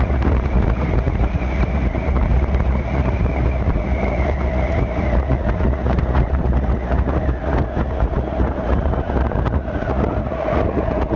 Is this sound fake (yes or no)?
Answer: yes